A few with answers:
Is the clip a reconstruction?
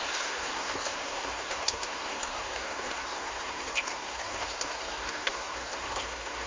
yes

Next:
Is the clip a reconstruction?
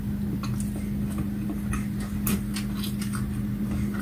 no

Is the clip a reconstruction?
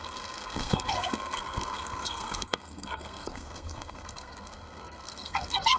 yes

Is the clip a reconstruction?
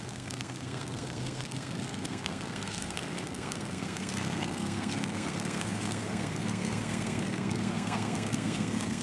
yes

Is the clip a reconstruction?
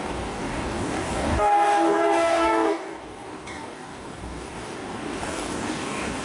yes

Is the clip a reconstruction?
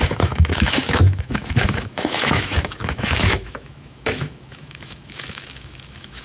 yes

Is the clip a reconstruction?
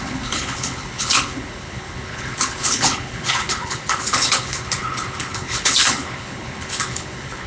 yes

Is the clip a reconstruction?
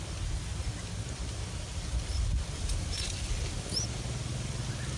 no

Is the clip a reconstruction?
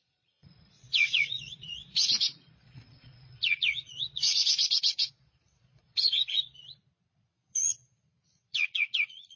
yes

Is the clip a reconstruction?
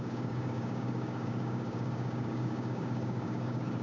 yes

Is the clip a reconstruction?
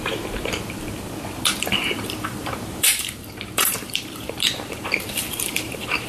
yes